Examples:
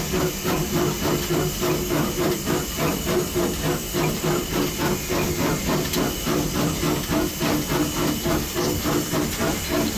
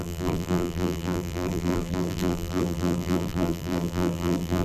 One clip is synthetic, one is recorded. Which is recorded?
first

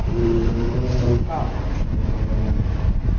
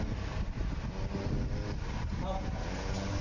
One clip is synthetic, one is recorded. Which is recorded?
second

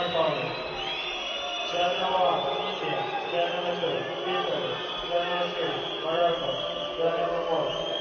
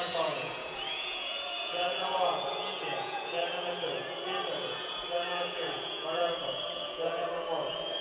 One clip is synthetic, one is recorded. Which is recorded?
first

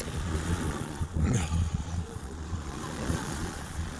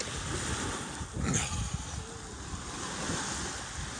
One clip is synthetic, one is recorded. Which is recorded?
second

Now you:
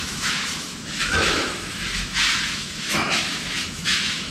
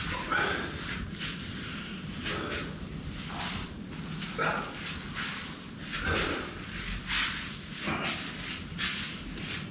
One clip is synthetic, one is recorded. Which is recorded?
second